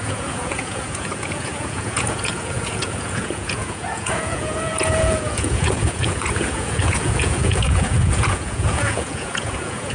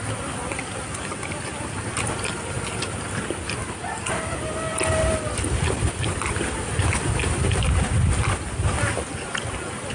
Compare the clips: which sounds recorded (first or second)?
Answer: second